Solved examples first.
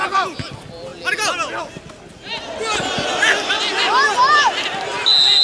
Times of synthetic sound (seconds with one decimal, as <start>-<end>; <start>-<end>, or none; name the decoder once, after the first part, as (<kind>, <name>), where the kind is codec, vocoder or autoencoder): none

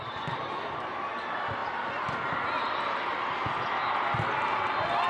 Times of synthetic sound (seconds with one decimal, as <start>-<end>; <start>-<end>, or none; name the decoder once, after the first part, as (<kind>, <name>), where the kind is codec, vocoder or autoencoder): none

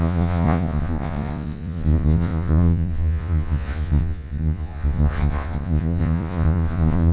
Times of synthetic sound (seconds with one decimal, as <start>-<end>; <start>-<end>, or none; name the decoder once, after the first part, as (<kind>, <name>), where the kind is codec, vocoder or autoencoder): 0.0-7.1 (vocoder, Vocos)